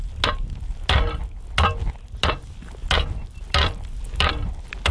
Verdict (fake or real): real